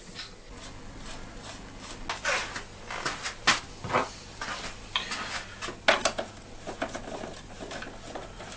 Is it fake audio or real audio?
real